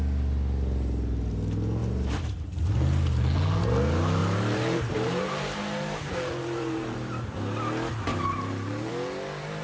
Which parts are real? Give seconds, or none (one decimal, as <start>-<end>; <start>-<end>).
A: 0.0-4.2; 7.2-8.1; 8.9-9.6